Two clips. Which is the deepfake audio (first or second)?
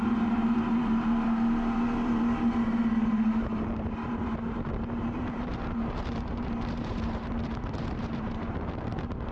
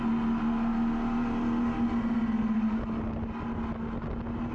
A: first